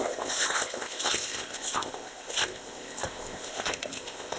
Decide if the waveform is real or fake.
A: fake